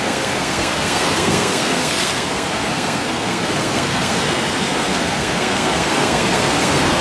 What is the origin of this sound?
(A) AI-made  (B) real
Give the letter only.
A